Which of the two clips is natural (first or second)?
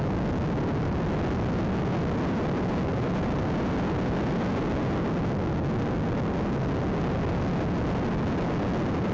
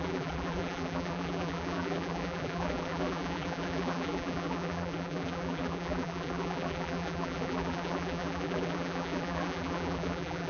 first